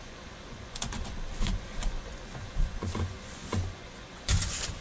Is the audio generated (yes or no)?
yes